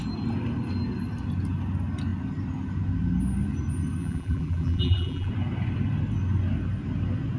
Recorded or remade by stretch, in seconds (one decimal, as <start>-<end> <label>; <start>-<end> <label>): 0.0-4.0 recorded; 4.0-5.3 remade; 5.3-7.4 recorded